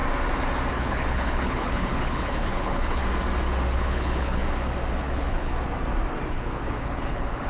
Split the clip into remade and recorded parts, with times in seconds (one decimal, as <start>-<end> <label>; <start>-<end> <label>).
0.0-0.7 recorded; 0.7-3.0 remade; 3.0-3.7 recorded; 3.7-4.4 remade; 4.4-5.0 recorded; 5.0-5.5 remade; 5.5-6.3 recorded; 6.3-7.5 remade

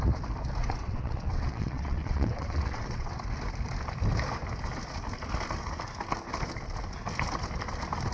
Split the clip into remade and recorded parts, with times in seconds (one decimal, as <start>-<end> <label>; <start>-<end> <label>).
0.0-0.6 recorded; 0.6-3.1 remade; 3.1-8.1 recorded

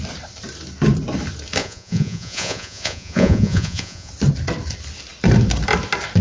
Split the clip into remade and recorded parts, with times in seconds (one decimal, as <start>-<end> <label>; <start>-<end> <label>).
0.0-1.6 recorded; 1.6-4.1 remade; 4.1-6.2 recorded

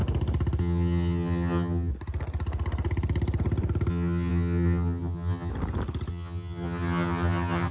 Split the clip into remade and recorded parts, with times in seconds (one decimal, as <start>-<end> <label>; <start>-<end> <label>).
0.0-0.6 recorded; 0.6-1.9 remade; 1.9-3.9 recorded; 3.9-5.5 remade; 5.5-6.1 recorded; 6.1-7.7 remade

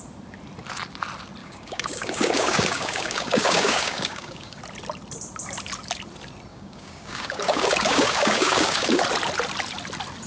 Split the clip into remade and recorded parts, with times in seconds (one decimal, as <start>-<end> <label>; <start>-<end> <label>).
0.0-1.4 recorded; 1.4-4.6 remade; 4.6-6.5 recorded; 6.5-9.0 remade; 9.0-10.3 recorded

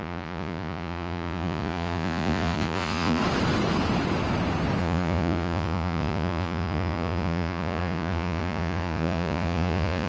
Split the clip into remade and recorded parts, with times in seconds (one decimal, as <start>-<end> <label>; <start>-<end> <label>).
0.0-3.2 remade; 3.2-4.8 recorded; 4.8-10.1 remade

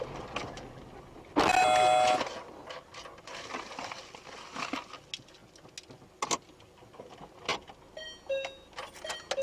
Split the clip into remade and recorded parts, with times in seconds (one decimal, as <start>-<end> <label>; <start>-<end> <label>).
0.0-9.4 recorded